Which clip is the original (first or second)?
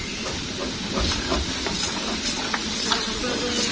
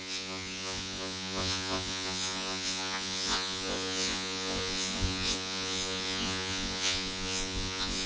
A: first